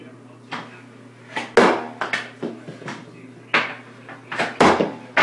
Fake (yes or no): no